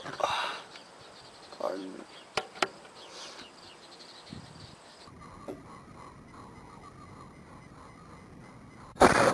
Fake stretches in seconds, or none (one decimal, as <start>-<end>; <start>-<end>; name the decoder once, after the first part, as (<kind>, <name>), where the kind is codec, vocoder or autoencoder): none